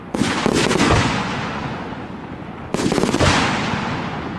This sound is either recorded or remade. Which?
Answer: remade